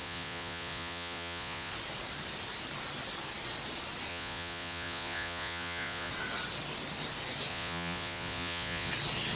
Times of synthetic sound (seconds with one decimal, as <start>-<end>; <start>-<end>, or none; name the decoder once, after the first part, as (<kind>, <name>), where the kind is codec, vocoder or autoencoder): 0.0-1.7 (vocoder, Vocos); 4.1-6.1; 7.5-8.9